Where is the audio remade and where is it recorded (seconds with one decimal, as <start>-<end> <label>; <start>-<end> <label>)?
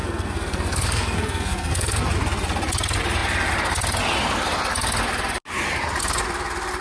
0.0-2.0 remade; 2.0-6.8 recorded